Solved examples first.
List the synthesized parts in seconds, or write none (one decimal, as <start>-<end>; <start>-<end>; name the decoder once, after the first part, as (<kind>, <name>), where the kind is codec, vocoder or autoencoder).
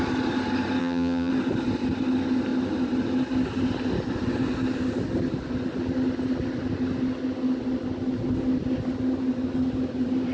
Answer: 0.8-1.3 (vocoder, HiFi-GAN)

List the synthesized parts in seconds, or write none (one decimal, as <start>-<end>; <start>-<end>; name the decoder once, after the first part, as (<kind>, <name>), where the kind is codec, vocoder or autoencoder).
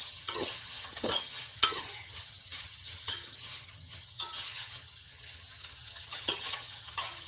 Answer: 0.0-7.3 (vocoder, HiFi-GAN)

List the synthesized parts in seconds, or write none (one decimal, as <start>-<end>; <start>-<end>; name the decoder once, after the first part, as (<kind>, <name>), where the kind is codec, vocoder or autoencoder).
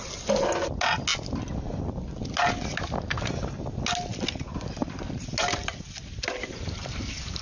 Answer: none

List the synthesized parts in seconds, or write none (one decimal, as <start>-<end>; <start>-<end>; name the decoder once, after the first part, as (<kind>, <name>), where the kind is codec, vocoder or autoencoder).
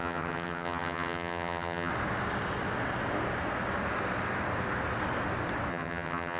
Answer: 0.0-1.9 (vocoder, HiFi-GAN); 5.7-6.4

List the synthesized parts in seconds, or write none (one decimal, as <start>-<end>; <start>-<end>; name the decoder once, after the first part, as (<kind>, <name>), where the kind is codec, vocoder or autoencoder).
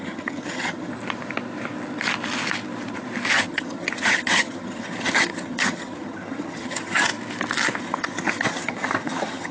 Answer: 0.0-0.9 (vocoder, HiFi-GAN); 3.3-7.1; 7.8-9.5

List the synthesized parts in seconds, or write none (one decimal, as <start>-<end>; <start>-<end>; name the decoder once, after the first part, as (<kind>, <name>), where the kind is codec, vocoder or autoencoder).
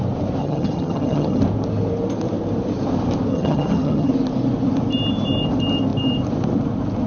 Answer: 0.4-1.4 (vocoder, HiFi-GAN); 3.3-4.1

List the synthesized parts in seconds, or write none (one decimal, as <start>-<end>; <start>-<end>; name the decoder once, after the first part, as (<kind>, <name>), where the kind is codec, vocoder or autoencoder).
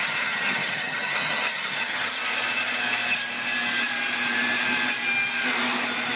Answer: 0.0-2.2 (vocoder, HiFi-GAN)